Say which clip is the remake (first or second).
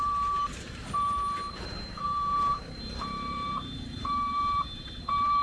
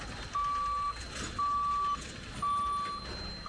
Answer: first